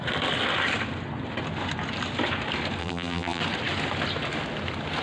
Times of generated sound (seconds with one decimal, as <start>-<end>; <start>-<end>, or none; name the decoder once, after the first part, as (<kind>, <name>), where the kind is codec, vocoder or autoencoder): 2.8-3.4 (vocoder, BigVGAN v2)